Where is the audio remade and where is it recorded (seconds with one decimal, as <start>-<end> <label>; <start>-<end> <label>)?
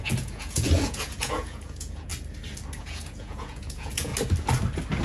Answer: 0.0-2.1 remade; 2.1-2.8 recorded; 2.8-4.1 remade; 4.1-5.0 recorded